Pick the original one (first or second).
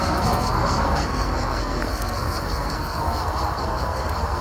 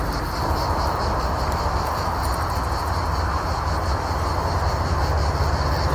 second